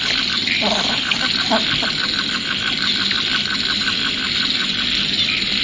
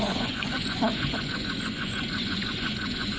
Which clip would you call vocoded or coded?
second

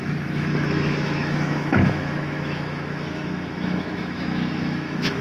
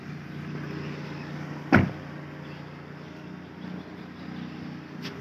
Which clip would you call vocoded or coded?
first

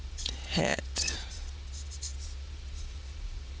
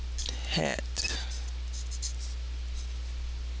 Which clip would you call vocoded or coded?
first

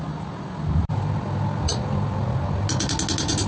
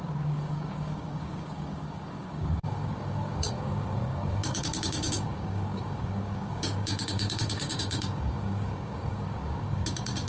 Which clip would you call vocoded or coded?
second